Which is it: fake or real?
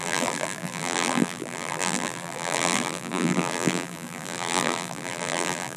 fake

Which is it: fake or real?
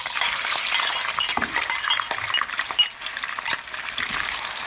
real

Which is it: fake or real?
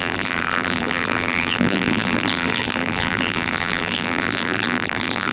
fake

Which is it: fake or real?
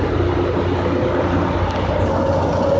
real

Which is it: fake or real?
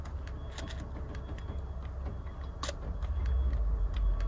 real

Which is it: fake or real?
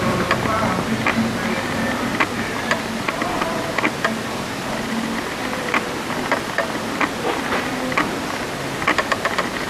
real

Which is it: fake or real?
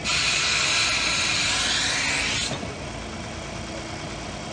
real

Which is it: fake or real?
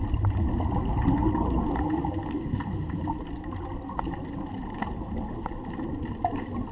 real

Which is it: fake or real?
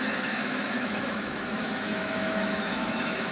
fake